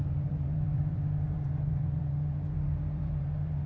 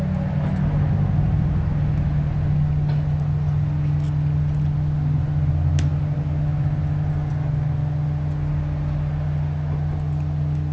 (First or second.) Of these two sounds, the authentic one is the second